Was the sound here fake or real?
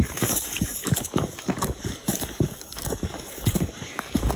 fake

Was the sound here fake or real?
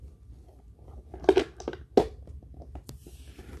real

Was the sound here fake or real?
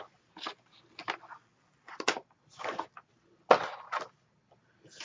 real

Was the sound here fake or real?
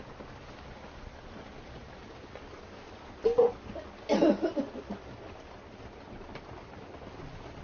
real